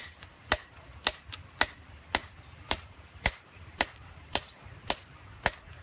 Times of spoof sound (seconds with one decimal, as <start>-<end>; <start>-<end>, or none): 2.2-4.6